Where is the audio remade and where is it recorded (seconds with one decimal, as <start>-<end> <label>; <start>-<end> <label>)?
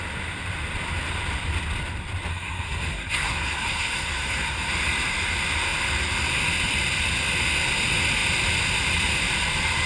0.0-2.3 recorded; 2.3-4.7 remade; 4.7-9.9 recorded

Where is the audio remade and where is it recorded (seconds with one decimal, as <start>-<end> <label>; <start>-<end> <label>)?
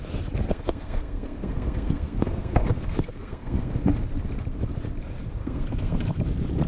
0.0-0.5 recorded; 0.5-3.7 remade; 3.7-5.4 recorded; 5.4-6.2 remade; 6.2-6.7 recorded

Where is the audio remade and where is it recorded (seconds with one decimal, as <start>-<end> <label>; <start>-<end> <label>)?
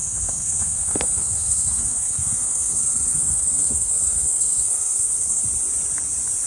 0.0-5.4 remade; 5.4-6.5 recorded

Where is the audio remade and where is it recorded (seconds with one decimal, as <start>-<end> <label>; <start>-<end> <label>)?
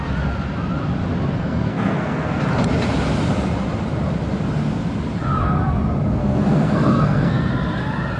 0.0-1.4 recorded; 1.4-2.4 remade; 2.4-6.2 recorded; 6.2-7.5 remade; 7.5-8.2 recorded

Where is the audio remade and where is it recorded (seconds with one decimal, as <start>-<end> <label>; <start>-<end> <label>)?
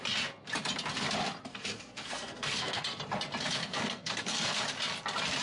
0.0-1.5 recorded; 1.5-2.8 remade; 2.8-3.6 recorded; 3.6-4.6 remade; 4.6-5.4 recorded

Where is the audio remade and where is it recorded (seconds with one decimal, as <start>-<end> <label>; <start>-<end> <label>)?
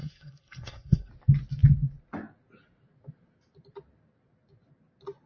0.0-1.1 remade; 1.1-5.3 recorded